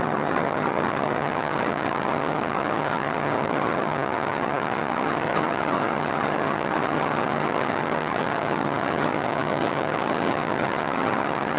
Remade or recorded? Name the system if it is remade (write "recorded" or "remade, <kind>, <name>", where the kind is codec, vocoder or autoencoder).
remade, vocoder, HiFi-GAN